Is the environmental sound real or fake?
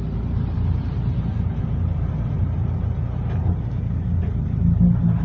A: real